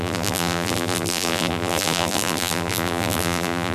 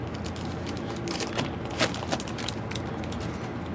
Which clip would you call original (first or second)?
second